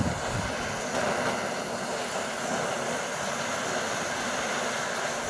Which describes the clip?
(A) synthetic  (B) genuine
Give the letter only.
A